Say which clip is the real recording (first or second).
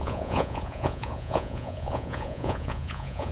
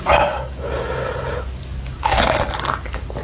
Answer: second